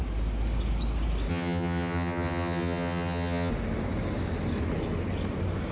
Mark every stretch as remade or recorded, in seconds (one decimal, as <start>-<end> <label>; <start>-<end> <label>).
0.0-1.3 recorded; 1.3-3.5 remade; 3.5-5.7 recorded